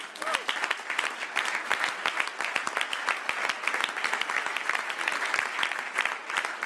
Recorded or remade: recorded